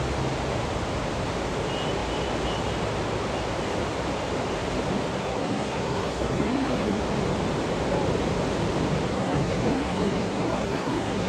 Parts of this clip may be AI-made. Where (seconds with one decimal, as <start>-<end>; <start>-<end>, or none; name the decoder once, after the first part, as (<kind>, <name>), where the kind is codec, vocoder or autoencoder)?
5.2-7.0 (codec, SNAC); 9.1-11.3